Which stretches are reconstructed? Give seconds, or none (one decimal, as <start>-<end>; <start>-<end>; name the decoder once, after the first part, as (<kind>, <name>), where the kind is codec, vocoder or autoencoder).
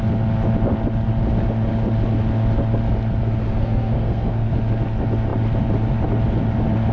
3.4-4.5 (codec, SNAC)